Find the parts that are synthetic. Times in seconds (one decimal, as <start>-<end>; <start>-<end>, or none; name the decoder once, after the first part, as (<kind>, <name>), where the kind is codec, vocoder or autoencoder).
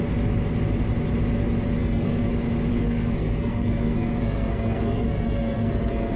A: 1.8-2.3 (codec, SNAC); 2.7-6.2